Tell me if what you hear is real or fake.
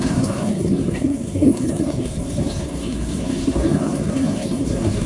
fake